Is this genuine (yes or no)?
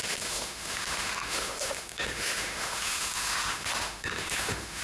no